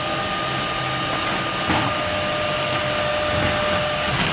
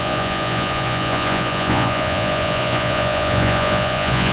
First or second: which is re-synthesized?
second